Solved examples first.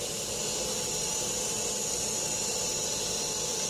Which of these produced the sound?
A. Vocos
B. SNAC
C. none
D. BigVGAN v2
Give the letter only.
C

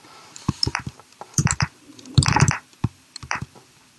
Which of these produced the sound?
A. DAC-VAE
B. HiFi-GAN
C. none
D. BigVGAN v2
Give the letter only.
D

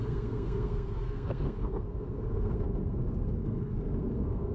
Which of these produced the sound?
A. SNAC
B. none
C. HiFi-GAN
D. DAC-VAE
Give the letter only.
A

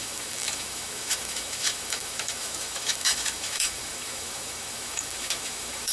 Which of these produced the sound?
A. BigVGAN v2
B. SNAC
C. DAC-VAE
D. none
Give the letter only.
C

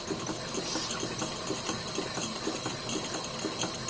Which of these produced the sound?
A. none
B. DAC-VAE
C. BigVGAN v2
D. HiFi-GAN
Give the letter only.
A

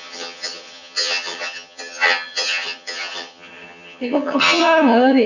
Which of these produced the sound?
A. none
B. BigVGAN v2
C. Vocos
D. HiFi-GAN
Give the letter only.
D